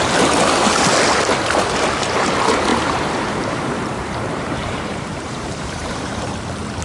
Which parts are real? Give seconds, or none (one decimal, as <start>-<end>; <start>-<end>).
0.0-2.7; 6.3-6.8